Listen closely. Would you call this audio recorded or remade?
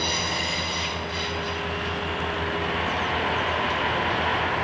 recorded